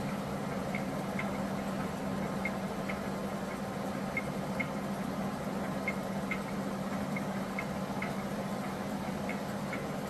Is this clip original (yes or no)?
yes